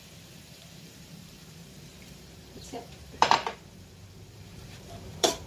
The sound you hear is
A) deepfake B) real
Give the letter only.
A